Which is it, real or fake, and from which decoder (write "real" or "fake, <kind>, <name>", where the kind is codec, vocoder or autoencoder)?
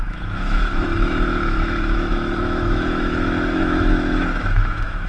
fake, autoencoder, DAC-VAE